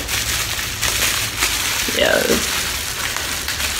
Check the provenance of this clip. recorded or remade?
recorded